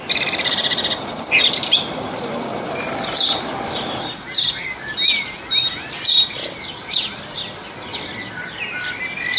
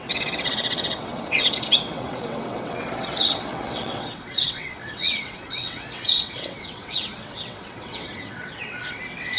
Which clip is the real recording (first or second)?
first